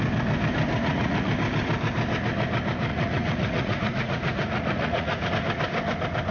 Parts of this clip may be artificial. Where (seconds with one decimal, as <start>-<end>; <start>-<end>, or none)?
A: 0.7-1.3; 2.9-5.3